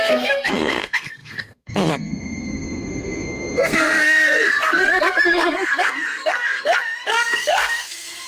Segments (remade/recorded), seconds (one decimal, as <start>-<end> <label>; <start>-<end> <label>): 0.0-8.3 remade